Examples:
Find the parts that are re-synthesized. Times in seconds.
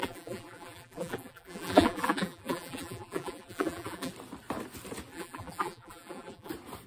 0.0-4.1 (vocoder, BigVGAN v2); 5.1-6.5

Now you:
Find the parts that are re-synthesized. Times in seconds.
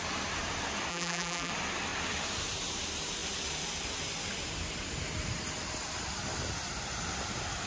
0.9-1.5 (vocoder, BigVGAN v2)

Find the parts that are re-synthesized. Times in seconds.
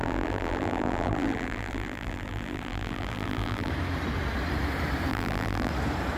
0.0-3.7 (vocoder, BigVGAN v2); 5.1-5.7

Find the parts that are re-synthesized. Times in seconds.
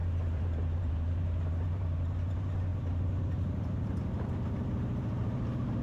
0.0-5.8 (vocoder, BigVGAN v2)